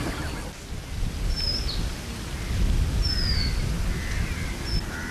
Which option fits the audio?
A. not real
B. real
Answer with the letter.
B